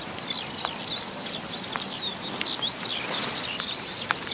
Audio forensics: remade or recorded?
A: remade